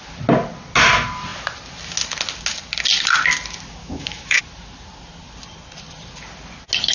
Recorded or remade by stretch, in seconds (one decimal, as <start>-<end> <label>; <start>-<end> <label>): 0.0-3.8 recorded; 3.8-4.4 remade; 4.4-6.9 recorded